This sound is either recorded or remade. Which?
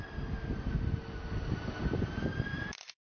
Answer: recorded